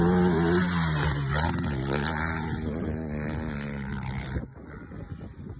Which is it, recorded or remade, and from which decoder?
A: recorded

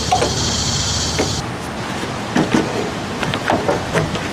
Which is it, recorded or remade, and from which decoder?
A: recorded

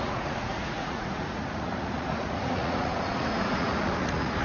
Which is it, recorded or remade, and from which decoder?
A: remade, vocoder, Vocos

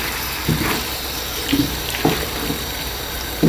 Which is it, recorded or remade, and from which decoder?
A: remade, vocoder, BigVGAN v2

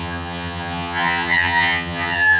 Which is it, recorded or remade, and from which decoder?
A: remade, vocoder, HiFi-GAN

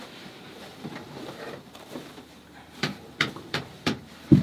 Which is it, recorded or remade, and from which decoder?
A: remade, vocoder, BigVGAN v2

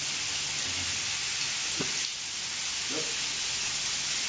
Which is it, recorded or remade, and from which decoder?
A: recorded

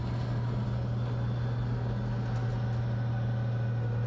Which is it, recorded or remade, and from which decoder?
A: recorded